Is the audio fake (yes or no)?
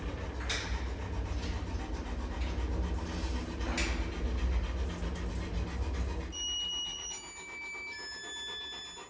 no